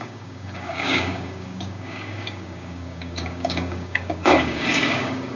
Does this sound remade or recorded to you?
remade